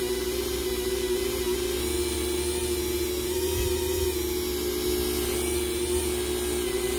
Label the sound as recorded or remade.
recorded